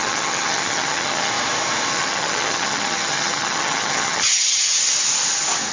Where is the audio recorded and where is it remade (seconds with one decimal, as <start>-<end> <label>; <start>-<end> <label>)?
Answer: 0.0-1.3 remade; 1.3-1.9 recorded; 1.9-4.9 remade; 4.9-5.7 recorded